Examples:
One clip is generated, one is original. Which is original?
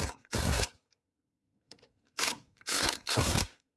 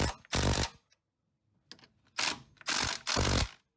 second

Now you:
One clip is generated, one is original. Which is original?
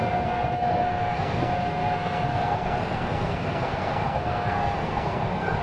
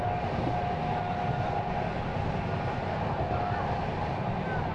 second